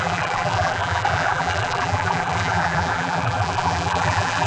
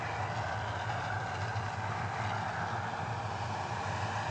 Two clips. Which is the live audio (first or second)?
second